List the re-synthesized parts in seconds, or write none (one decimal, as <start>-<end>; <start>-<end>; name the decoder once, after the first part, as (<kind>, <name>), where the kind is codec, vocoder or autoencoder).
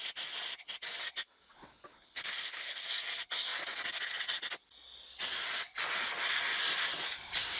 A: 1.9-2.8 (codec, HILCodec)